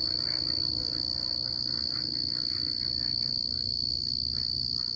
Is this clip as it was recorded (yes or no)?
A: no